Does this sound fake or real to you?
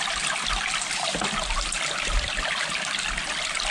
real